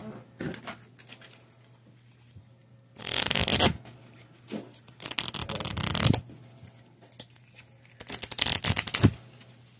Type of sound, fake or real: real